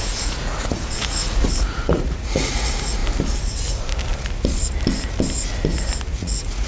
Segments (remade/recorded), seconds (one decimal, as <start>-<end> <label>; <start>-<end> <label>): 0.0-3.0 remade; 3.0-6.1 recorded; 6.1-6.7 remade